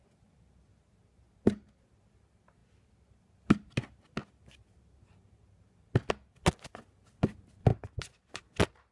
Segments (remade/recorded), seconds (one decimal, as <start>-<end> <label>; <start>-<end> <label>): 0.0-8.9 recorded